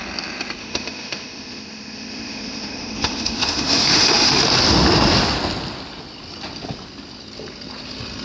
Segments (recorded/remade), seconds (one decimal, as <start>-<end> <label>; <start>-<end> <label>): 0.0-0.6 recorded; 0.6-4.3 remade; 4.3-8.2 recorded